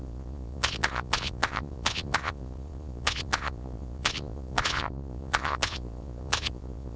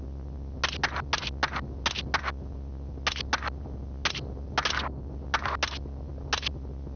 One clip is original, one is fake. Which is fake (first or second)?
first